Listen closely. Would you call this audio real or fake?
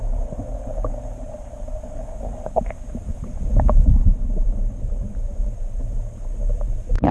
fake